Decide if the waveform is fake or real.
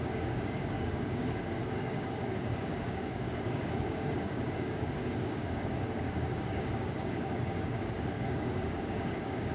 fake